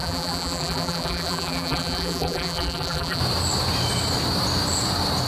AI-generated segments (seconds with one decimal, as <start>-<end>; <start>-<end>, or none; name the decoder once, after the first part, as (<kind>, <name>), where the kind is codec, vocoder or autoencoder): 0.0-3.2 (vocoder, BigVGAN v2)